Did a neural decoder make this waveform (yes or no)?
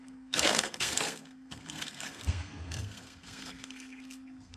yes